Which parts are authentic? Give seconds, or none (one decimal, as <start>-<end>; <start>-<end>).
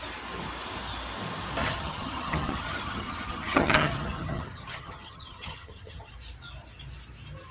0.0-1.6; 6.1-7.5